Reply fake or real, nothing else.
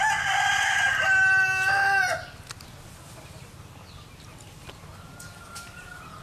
real